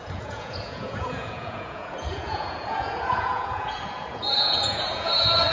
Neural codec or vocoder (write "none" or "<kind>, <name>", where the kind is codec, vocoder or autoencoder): vocoder, Vocos